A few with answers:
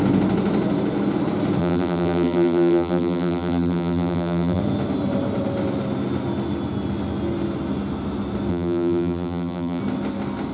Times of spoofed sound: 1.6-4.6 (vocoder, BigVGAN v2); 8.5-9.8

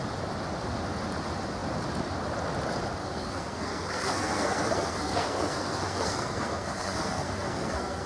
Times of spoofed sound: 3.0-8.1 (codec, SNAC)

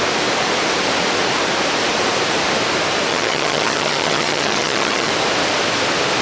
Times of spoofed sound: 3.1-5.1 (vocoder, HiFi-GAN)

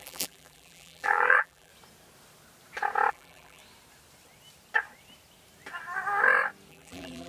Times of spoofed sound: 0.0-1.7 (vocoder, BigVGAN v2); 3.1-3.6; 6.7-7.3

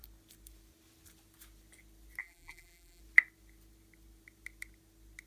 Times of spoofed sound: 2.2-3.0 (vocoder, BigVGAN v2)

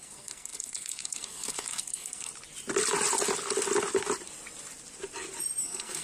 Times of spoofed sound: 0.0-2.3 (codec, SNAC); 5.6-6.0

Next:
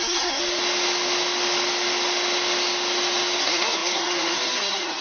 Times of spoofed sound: 0.0-0.4 (codec, SNAC); 3.4-5.0